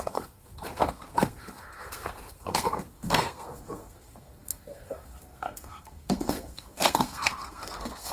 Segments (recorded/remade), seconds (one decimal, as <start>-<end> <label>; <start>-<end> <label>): 0.0-8.1 remade